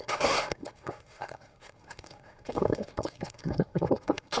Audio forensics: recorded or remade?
remade